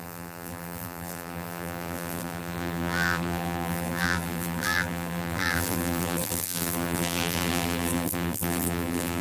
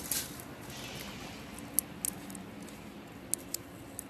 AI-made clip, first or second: first